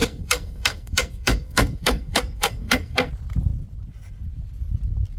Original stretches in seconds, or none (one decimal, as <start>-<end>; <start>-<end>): 3.1-5.2